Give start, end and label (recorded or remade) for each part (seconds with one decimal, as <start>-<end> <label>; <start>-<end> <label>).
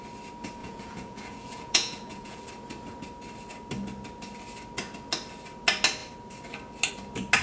0.0-0.6 recorded; 0.6-2.4 remade; 2.4-7.4 recorded